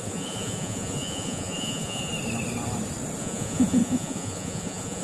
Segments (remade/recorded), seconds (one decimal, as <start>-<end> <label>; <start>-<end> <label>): 0.0-2.1 remade; 2.1-3.2 recorded; 3.2-5.0 remade